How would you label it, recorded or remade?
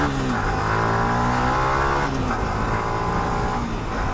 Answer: recorded